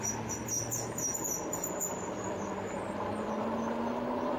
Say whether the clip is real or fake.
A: real